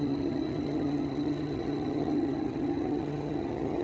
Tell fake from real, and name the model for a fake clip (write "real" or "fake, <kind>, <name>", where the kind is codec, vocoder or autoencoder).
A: fake, vocoder, HiFi-GAN